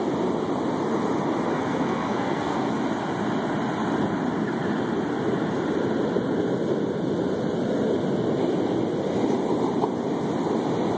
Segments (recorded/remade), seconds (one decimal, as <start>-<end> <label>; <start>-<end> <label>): 0.0-1.5 recorded; 1.5-2.7 remade; 2.7-11.0 recorded